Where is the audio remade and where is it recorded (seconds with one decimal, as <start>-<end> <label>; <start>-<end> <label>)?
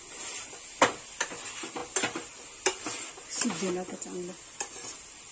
0.0-1.8 recorded; 1.8-3.1 remade; 3.1-5.3 recorded